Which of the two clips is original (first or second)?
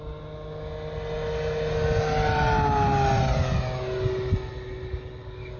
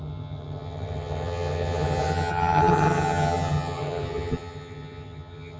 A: first